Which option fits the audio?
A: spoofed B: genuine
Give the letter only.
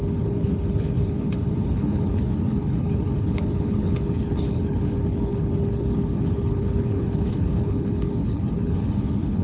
A